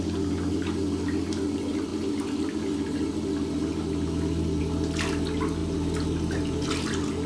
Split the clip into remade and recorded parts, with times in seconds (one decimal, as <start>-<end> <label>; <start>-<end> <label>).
0.0-7.3 recorded